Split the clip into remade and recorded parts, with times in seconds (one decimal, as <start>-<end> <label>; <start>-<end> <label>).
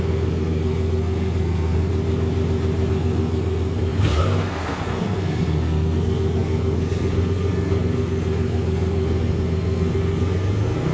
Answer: 0.0-1.9 remade; 1.9-2.9 recorded; 2.9-10.9 remade